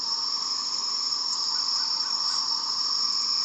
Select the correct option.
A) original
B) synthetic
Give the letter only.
A